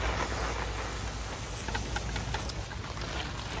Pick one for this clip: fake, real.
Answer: real